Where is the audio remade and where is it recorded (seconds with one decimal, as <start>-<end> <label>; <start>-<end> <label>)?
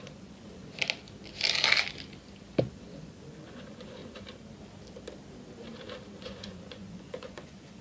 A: 0.0-0.7 remade; 0.7-2.6 recorded; 2.6-4.0 remade; 4.0-6.2 recorded; 6.2-7.8 remade